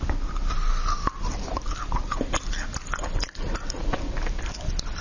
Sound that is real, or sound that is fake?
real